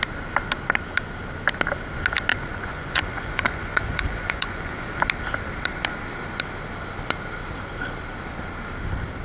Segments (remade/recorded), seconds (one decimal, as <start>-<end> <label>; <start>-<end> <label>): 0.0-2.3 recorded; 2.3-5.0 remade; 5.0-9.2 recorded